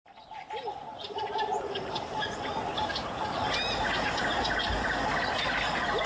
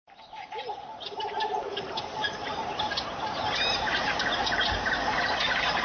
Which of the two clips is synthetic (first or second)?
second